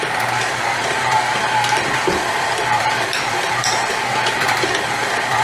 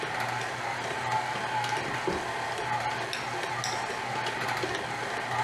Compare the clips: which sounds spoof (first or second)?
first